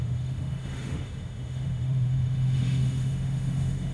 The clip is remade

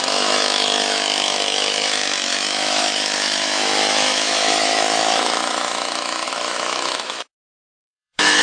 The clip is remade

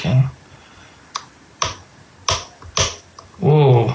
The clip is recorded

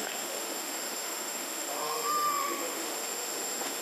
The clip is remade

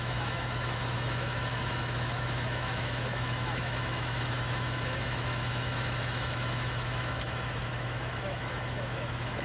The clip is remade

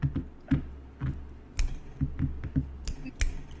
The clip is recorded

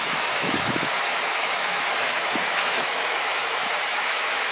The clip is remade